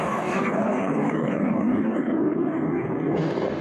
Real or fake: fake